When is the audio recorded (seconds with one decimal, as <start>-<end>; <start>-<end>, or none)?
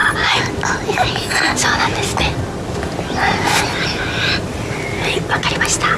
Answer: 0.0-6.0